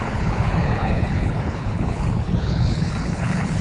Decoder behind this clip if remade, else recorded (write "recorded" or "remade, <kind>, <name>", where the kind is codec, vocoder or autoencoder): remade, codec, HILCodec